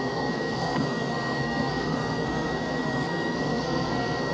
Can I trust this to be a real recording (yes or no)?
no